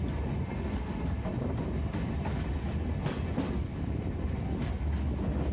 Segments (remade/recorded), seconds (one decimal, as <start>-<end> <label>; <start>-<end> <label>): 0.0-1.3 recorded; 1.3-4.6 remade; 4.6-5.5 recorded